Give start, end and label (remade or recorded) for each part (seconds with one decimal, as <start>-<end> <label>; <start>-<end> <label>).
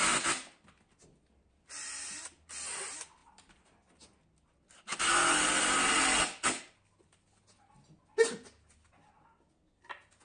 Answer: 0.0-10.2 recorded